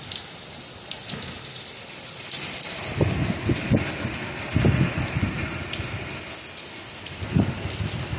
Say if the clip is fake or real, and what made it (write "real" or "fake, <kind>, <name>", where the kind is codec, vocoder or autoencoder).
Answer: real